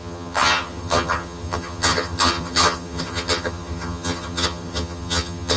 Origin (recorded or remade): remade